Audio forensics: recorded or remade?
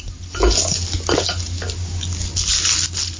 recorded